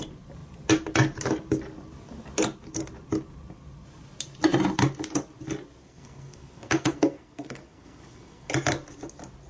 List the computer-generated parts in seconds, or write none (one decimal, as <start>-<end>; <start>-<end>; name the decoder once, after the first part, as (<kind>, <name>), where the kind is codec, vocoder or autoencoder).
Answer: 5.8-8.5 (codec, SNAC)